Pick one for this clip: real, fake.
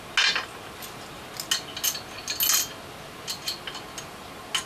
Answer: real